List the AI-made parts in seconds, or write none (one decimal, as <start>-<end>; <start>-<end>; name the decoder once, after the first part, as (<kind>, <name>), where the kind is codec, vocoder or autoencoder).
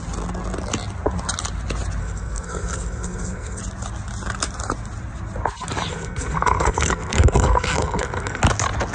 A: 2.0-3.6 (codec, SNAC); 5.9-8.4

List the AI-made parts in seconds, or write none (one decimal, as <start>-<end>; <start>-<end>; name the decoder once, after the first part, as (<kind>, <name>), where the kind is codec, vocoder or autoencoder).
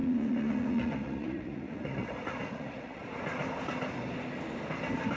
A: 0.0-3.1 (vocoder, Vocos)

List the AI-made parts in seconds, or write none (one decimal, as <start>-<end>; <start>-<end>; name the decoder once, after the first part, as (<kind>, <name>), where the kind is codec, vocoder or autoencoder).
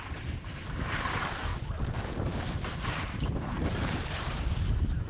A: 0.0-1.5 (vocoder, BigVGAN v2); 2.5-5.1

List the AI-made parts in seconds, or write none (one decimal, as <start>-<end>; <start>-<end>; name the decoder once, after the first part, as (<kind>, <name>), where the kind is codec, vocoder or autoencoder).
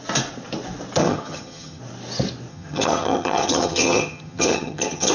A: 1.0-1.8 (vocoder, HiFi-GAN); 2.5-5.1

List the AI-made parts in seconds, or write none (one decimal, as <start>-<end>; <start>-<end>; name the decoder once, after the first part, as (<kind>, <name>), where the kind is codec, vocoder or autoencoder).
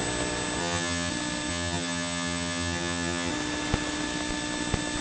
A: 0.6-1.1 (vocoder, HiFi-GAN); 1.5-3.3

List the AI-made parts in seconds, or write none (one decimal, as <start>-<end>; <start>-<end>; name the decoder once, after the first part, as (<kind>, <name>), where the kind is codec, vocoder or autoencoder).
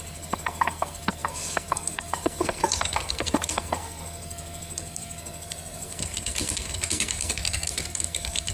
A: 0.0-8.5 (codec, SNAC)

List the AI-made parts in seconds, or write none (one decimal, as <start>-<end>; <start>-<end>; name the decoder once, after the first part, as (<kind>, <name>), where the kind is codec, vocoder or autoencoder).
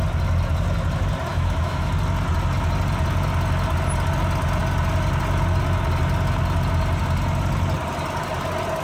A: 1.3-1.9 (autoencoder, DAC-VAE)